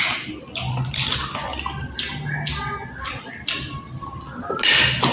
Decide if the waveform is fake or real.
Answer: real